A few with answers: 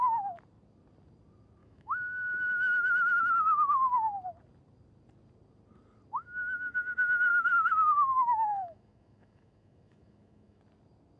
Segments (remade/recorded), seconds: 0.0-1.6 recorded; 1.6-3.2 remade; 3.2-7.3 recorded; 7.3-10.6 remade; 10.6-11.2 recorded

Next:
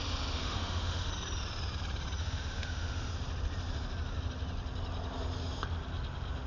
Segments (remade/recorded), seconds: 0.0-0.4 recorded; 0.4-1.1 remade; 1.1-2.2 recorded; 2.2-3.1 remade; 3.1-6.5 recorded